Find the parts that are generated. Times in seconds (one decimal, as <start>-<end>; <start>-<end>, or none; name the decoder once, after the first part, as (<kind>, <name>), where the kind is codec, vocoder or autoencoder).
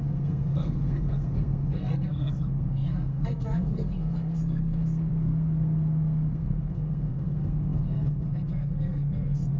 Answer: 0.0-9.6 (codec, SNAC)